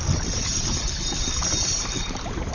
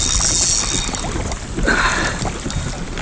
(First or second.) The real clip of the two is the second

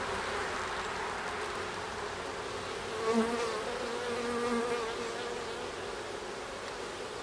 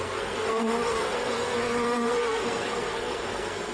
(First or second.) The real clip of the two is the first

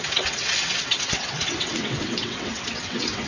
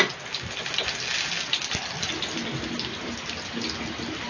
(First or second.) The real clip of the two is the second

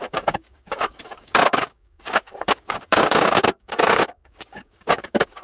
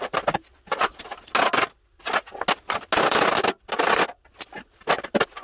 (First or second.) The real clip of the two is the second